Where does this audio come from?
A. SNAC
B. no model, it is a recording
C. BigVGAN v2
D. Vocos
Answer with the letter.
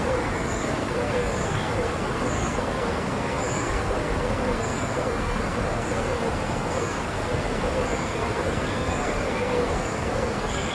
A